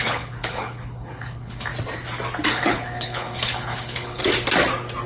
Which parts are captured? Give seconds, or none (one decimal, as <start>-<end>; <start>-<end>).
1.7-2.5; 4.2-5.1